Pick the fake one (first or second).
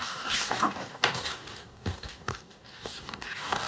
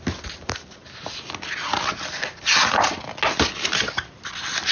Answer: first